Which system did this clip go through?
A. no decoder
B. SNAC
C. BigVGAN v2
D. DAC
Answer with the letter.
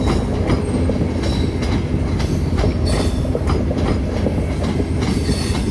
A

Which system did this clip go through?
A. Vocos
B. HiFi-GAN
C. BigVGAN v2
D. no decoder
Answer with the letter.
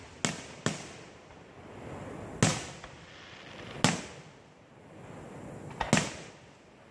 D